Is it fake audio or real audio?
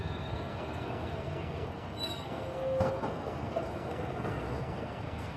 fake